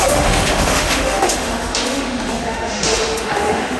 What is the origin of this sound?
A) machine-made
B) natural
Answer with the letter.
A